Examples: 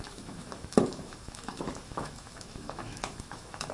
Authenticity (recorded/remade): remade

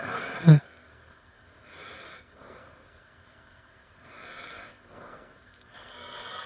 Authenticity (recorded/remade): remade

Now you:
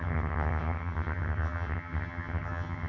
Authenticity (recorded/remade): remade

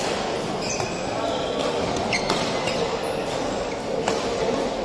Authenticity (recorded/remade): recorded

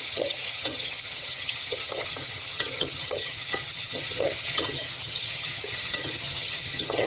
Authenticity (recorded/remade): remade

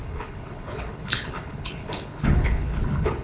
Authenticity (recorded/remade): remade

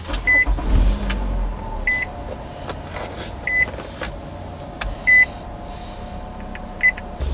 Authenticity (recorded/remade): recorded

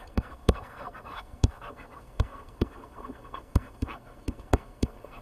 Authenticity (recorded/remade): remade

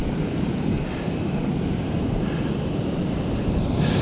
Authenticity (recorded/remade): recorded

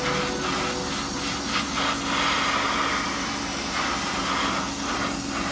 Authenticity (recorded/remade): recorded